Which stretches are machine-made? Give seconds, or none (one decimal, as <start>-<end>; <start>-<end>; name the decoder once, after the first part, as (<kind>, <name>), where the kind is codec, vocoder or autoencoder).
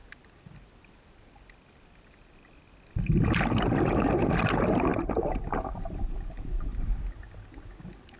4.9-5.8 (vocoder, BigVGAN v2)